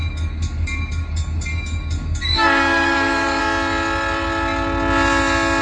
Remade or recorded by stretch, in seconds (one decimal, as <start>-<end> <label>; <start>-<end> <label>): 0.0-3.4 remade; 3.4-5.6 recorded